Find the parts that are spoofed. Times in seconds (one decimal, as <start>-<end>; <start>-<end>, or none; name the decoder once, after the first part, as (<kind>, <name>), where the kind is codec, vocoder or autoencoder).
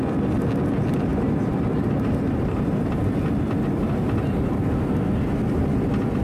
1.1-3.1 (vocoder, BigVGAN v2)